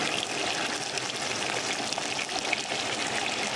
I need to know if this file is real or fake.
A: real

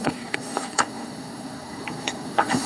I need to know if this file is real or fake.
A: fake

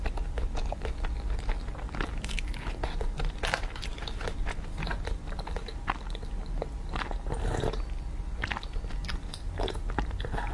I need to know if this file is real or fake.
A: real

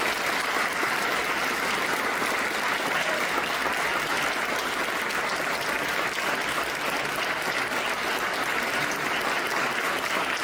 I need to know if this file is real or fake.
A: real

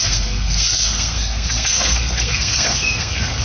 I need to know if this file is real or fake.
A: fake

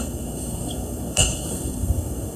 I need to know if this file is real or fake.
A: fake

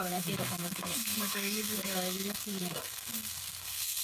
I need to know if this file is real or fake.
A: fake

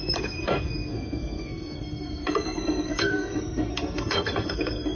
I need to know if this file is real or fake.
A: fake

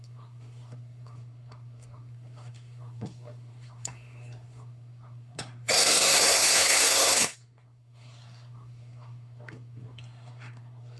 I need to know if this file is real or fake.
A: fake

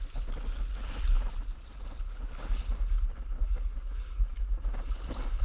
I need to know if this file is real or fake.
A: real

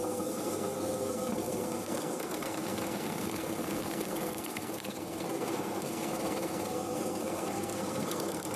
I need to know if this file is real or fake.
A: fake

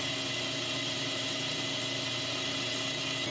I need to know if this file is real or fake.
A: real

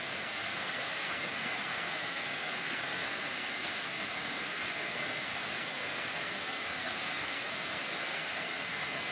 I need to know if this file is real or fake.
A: fake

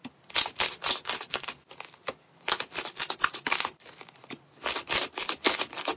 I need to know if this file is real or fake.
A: real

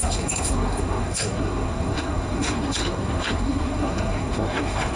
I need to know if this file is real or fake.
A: fake